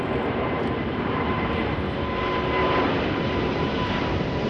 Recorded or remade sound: remade